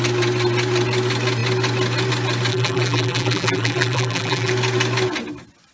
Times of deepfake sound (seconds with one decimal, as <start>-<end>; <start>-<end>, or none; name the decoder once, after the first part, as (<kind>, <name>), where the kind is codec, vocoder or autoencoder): 2.5-4.5 (vocoder, BigVGAN v2)